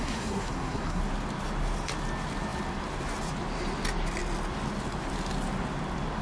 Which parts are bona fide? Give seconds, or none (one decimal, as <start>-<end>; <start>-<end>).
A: 1.0-6.2